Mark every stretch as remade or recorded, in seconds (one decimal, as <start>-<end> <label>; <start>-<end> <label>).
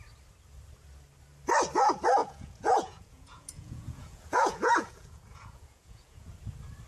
0.0-2.2 recorded; 2.2-6.3 remade; 6.3-6.9 recorded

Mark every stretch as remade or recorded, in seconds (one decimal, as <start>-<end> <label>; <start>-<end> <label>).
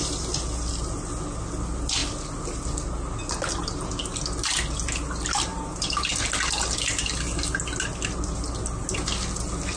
0.0-5.5 recorded; 5.5-6.1 remade; 6.1-9.8 recorded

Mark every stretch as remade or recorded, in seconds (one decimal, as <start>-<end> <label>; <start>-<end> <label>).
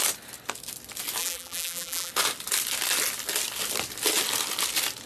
0.0-1.2 recorded; 1.2-2.1 remade; 2.1-5.1 recorded